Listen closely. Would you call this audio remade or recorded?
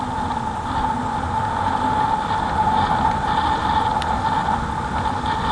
recorded